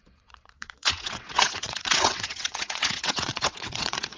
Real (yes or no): no